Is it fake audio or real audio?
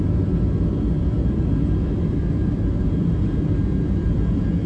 fake